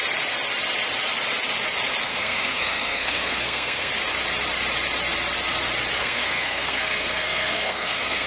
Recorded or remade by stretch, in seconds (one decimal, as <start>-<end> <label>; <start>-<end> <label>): 0.0-2.1 recorded; 2.1-3.9 remade; 3.9-6.0 recorded; 6.0-8.3 remade